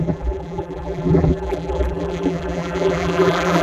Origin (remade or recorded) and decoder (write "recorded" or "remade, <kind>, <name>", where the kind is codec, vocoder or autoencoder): remade, vocoder, BigVGAN v2